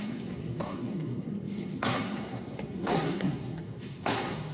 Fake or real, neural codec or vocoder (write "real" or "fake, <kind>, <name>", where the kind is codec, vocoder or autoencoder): fake, codec, SNAC